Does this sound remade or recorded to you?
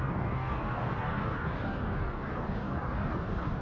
remade